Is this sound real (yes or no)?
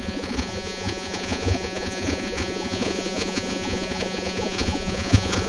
no